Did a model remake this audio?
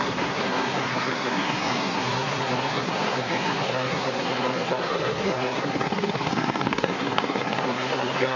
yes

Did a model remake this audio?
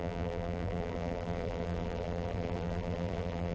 yes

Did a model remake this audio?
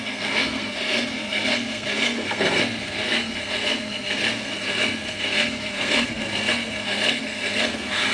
yes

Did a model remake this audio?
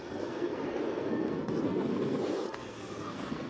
yes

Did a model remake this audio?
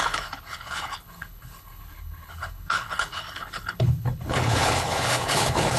yes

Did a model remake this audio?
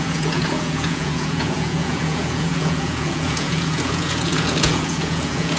yes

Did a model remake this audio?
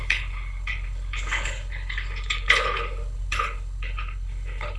yes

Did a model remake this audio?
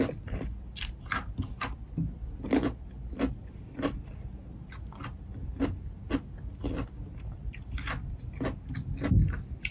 no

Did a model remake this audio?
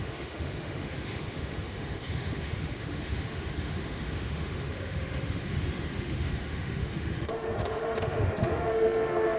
yes